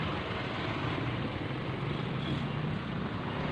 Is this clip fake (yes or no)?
no